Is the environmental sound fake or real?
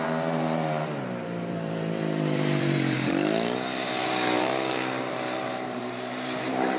fake